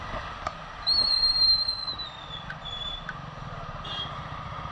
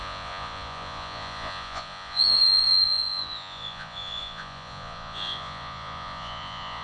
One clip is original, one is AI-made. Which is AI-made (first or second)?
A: second